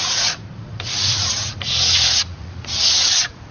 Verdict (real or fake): fake